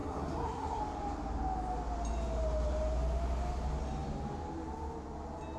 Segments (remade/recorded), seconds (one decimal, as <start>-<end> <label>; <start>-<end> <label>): 0.0-0.8 remade; 0.8-5.6 recorded